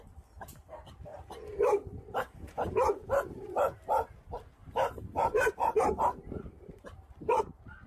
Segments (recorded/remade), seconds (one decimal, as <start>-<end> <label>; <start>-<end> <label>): 0.0-1.1 recorded; 1.1-4.1 remade; 4.1-4.6 recorded; 4.6-7.4 remade; 7.4-7.9 recorded